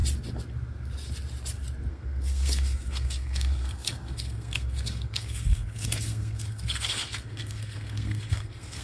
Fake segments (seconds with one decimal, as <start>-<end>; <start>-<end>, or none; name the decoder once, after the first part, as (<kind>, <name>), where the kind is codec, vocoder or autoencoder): 1.9-8.8 (codec, SNAC)